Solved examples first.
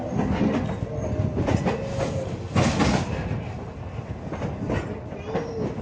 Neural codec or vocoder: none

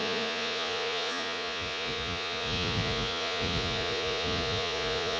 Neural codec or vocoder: vocoder, Vocos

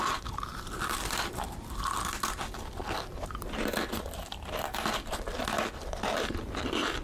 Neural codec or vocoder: none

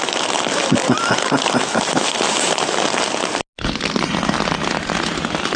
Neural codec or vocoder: none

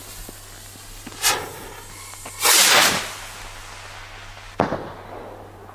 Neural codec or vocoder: none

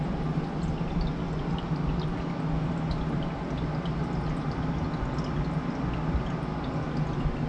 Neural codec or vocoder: none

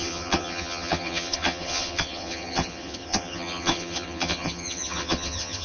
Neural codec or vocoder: vocoder, HiFi-GAN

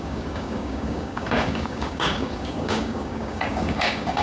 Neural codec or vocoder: codec, DAC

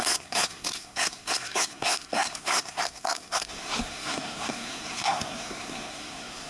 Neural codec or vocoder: codec, SNAC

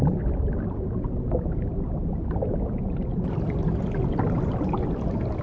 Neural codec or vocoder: none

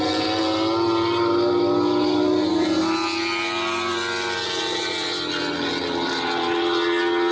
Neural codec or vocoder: none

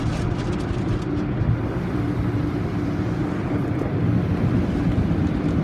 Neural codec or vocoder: vocoder, BigVGAN v2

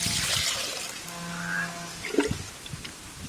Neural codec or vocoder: none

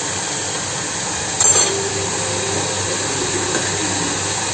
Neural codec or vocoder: none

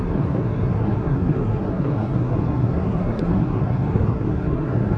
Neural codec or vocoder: codec, SNAC